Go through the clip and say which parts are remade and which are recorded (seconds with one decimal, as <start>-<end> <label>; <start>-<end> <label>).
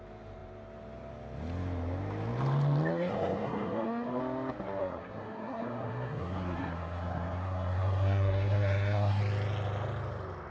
0.0-2.9 recorded; 2.9-4.2 remade; 4.2-4.8 recorded; 4.8-9.2 remade; 9.2-10.5 recorded